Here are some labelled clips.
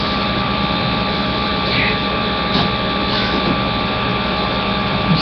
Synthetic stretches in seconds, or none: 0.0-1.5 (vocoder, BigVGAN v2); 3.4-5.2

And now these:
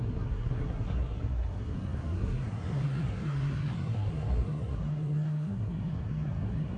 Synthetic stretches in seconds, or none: 0.0-6.8 (codec, SNAC)

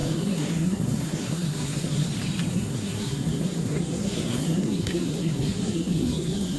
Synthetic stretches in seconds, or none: 0.0-2.1 (codec, SNAC); 2.5-6.6

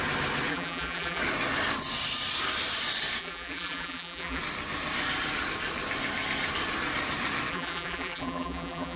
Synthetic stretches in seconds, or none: 0.5-1.2 (vocoder, BigVGAN v2); 3.2-4.4; 7.5-9.0

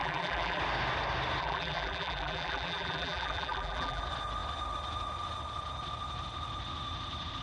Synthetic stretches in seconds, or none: 0.0-0.6 (vocoder, BigVGAN v2); 1.4-4.0

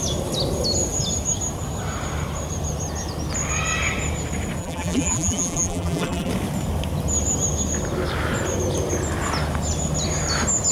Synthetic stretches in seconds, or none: 4.6-6.3 (vocoder, BigVGAN v2)

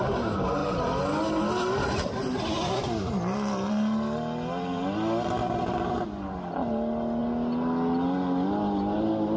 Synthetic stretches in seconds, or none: none

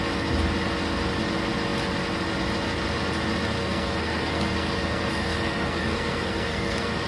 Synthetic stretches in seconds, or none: 3.6-7.1 (codec, SNAC)